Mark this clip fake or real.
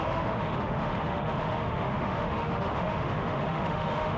fake